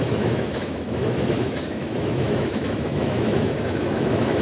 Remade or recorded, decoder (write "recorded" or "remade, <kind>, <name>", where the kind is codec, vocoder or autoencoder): remade, autoencoder, DAC-VAE